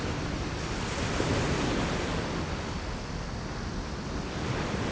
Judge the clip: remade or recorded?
recorded